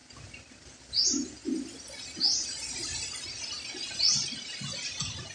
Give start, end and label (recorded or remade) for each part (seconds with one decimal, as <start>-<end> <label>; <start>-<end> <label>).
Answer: 0.0-0.7 recorded; 0.7-1.4 remade; 1.4-2.2 recorded; 2.2-2.8 remade; 2.8-4.0 recorded; 4.0-5.3 remade